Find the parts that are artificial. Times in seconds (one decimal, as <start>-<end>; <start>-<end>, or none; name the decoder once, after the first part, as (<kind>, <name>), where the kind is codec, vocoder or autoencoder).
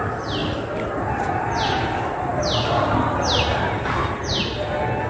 none